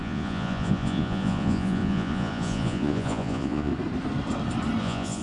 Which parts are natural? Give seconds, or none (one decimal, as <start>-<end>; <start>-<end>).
3.7-4.8